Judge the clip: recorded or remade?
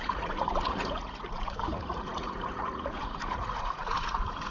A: remade